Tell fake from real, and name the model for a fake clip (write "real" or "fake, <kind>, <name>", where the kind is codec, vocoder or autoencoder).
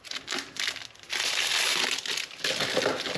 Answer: real